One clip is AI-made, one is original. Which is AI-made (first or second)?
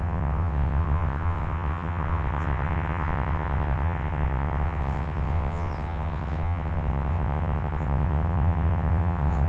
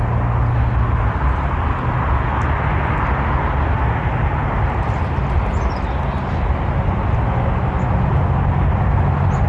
first